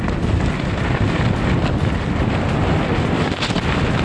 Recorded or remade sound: recorded